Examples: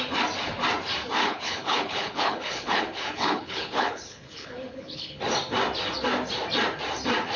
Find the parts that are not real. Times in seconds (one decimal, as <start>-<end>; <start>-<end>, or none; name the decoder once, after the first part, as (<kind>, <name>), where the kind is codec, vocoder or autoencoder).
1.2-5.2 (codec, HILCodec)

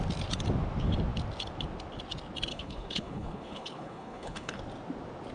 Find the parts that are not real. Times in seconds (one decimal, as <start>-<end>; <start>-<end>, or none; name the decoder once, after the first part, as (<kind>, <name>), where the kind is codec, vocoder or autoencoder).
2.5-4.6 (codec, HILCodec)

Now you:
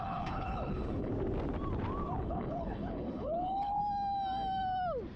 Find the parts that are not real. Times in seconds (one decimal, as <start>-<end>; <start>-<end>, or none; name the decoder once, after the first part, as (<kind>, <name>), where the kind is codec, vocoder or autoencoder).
0.0-1.1 (codec, HILCodec); 2.2-3.8

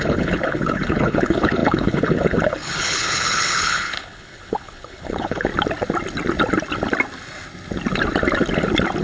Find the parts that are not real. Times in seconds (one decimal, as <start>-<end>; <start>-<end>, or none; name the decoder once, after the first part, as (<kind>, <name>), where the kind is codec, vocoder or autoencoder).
0.0-5.5 (codec, HILCodec)

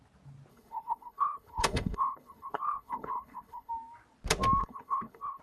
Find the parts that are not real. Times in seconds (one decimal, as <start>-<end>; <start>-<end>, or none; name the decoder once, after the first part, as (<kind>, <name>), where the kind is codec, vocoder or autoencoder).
0.5-3.7 (codec, HILCodec); 4.6-5.4

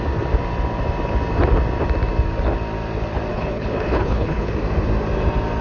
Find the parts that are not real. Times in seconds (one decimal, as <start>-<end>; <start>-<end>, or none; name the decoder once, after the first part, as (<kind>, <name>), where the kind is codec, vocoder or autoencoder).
3.3-4.5 (codec, HILCodec)